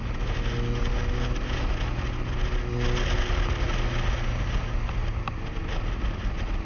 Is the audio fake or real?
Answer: real